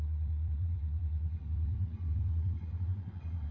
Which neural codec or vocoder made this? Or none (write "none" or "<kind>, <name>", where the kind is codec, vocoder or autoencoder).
vocoder, WaveNeXt